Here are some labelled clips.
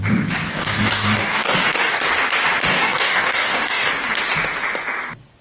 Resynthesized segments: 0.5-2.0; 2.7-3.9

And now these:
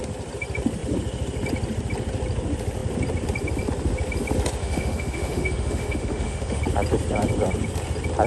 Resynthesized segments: 4.6-6.6